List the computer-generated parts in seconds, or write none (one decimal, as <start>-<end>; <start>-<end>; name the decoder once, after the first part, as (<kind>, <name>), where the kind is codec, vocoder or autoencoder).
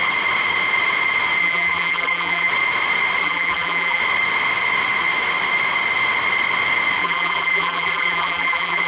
1.4-2.5 (vocoder, BigVGAN v2); 3.2-4.0; 7.0-8.9